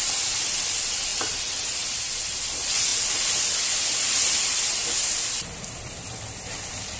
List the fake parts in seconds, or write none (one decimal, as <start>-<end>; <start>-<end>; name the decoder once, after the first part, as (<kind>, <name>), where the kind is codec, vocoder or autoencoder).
0.0-7.0 (vocoder, BigVGAN v2)